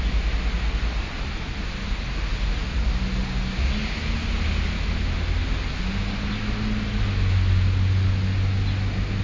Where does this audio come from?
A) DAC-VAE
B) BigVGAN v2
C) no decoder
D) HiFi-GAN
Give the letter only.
C